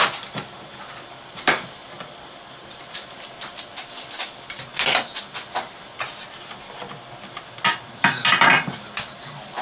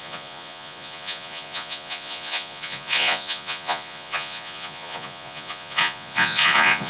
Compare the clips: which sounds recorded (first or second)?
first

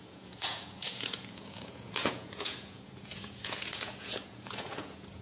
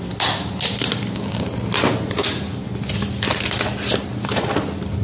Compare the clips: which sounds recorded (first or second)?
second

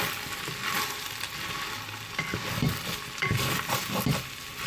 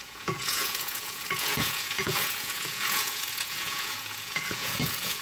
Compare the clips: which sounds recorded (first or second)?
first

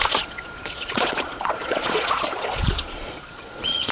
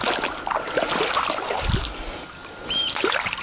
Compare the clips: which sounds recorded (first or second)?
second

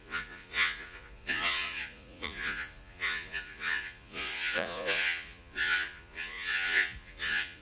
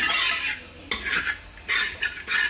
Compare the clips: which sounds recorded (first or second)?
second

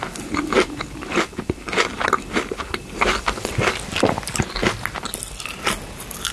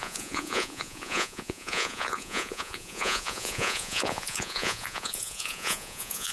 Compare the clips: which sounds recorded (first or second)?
first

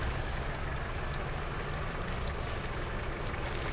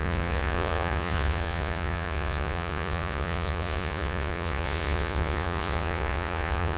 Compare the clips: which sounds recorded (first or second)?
first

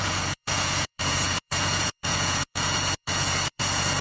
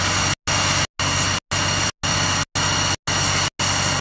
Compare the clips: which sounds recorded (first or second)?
second